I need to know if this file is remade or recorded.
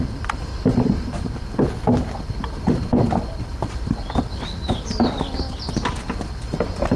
recorded